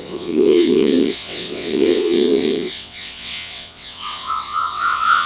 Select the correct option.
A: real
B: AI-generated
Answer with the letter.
B